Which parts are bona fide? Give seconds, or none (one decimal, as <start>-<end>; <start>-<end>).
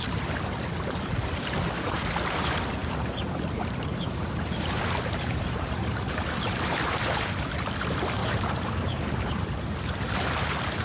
0.0-2.8; 7.5-8.2; 10.1-10.8